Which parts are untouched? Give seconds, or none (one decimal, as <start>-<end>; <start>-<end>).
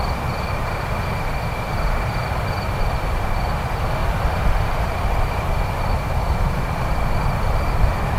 0.0-4.0; 5.9-8.2